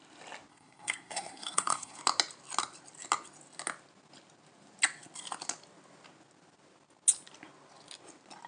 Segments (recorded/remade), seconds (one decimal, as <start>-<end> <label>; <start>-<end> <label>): 0.0-0.5 recorded; 0.5-2.0 remade; 2.0-8.5 recorded